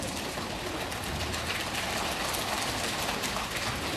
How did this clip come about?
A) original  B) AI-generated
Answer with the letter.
A